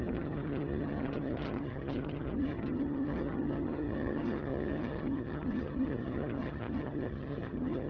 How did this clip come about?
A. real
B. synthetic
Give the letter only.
B